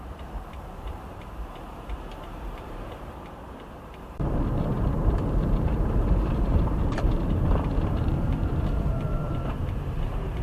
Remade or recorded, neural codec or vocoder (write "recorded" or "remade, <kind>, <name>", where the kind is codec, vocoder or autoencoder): remade, vocoder, BigVGAN v2